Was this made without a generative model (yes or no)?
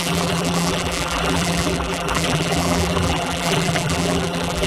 no